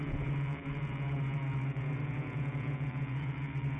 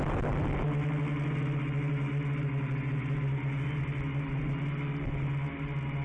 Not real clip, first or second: first